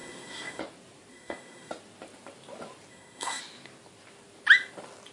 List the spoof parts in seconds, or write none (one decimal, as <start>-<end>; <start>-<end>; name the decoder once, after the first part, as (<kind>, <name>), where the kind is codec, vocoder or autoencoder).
0.0-0.6 (codec, SNAC); 1.1-1.7; 2.9-3.4